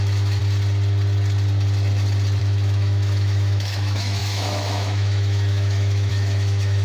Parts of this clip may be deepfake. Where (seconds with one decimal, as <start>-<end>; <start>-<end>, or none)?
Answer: 0.0-0.4; 2.4-6.8

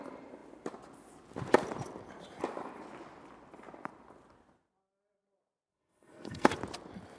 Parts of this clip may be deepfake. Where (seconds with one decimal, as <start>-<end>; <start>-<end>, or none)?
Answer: 5.7-6.5

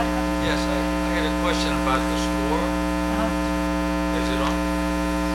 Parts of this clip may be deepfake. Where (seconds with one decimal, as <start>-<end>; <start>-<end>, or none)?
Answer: none

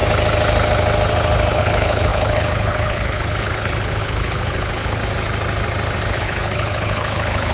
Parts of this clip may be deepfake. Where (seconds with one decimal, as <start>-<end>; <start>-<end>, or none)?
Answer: 1.5-5.0; 6.1-7.5